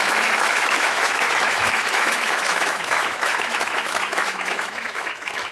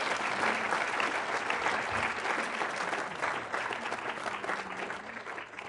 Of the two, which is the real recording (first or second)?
second